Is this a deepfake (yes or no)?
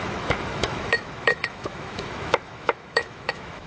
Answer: yes